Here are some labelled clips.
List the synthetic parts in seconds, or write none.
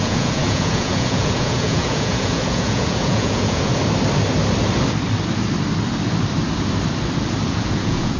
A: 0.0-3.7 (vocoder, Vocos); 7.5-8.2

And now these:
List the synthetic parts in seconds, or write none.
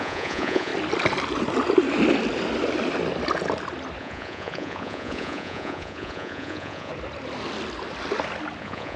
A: 0.0-0.7 (vocoder, Vocos); 4.0-6.9; 8.6-9.0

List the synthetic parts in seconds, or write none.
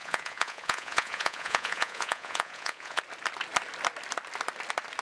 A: 0.0-3.0 (vocoder, Vocos)